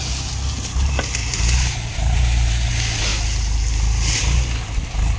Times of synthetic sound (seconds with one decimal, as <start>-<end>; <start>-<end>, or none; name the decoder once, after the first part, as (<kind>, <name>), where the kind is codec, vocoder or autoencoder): 1.2-2.7 (vocoder, BigVGAN v2)